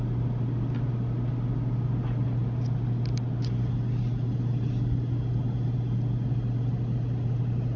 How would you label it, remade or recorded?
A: recorded